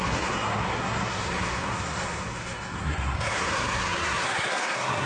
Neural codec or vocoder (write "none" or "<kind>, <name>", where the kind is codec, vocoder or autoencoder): codec, SNAC